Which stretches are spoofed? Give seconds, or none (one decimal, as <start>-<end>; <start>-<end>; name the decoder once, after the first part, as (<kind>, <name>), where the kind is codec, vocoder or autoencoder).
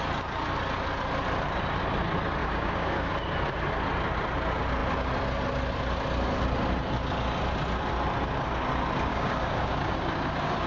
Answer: 2.4-3.1 (codec, DAC); 9.1-10.7